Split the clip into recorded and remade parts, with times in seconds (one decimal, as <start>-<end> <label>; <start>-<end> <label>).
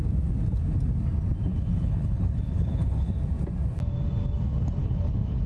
0.0-1.5 recorded; 1.5-3.1 remade; 3.1-4.8 recorded; 4.8-5.5 remade